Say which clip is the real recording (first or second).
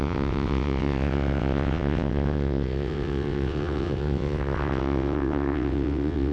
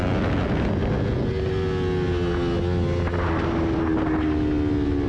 second